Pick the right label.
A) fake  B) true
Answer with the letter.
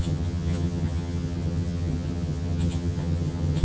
A